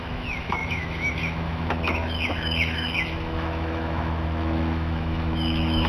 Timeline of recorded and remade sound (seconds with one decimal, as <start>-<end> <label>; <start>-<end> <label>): 0.0-5.9 remade